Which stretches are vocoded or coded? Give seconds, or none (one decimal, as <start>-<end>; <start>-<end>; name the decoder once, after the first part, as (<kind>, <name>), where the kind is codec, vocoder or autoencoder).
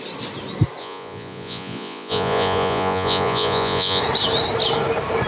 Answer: 0.8-4.0 (vocoder, Vocos)